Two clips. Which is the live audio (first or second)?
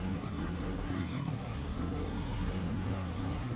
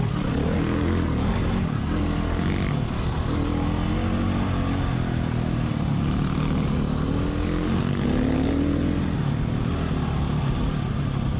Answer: second